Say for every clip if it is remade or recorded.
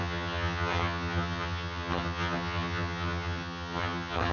remade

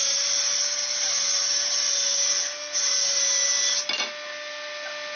recorded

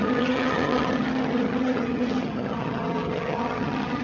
remade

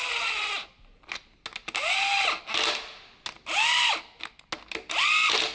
recorded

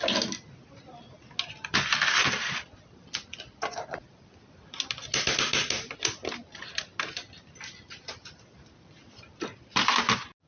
recorded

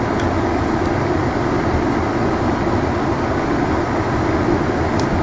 recorded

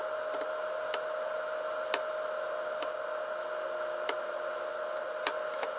recorded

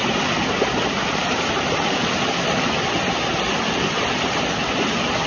recorded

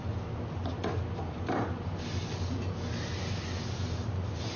recorded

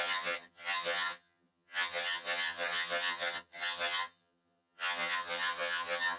remade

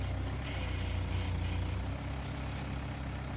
recorded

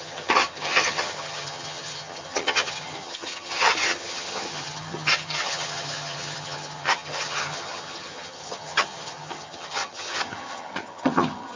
remade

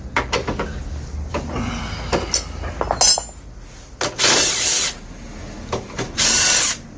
recorded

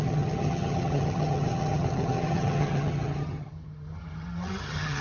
remade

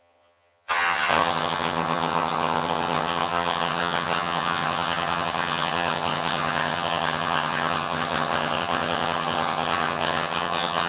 remade